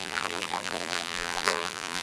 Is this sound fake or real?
fake